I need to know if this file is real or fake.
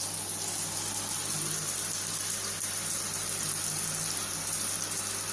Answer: real